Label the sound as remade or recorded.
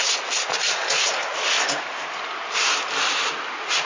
recorded